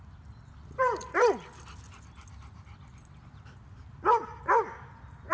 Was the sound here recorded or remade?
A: recorded